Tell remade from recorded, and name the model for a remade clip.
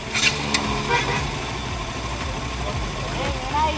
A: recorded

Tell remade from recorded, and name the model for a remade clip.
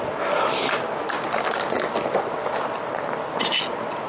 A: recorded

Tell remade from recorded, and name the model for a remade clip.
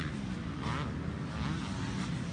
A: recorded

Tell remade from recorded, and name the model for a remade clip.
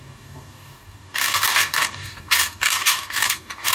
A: remade, codec, DAC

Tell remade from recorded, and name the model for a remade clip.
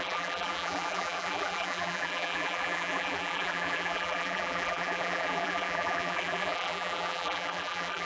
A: remade, vocoder, BigVGAN v2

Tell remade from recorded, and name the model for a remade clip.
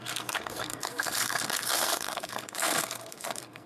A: remade, codec, SNAC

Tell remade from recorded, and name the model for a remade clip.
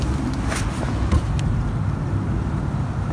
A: recorded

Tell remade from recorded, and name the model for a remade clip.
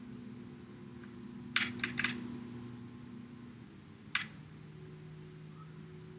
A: recorded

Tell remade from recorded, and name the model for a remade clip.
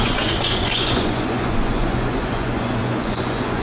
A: remade, vocoder, Vocos